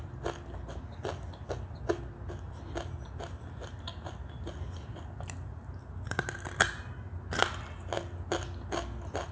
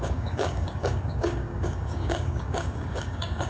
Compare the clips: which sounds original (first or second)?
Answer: first